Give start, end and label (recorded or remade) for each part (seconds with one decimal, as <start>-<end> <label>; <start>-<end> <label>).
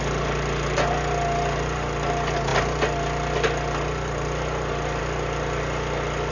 0.0-6.3 recorded